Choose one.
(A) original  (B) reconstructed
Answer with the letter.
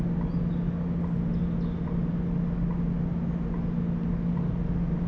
A